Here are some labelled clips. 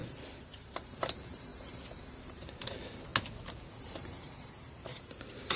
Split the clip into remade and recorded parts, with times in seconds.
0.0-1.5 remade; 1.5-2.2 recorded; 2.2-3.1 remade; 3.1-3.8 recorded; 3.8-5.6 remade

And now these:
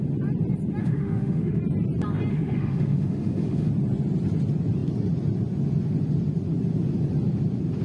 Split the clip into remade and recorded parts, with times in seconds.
0.0-0.8 recorded; 0.8-1.6 remade; 1.6-2.3 recorded; 2.3-3.7 remade; 3.7-7.8 recorded